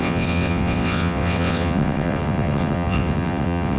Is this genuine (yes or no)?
no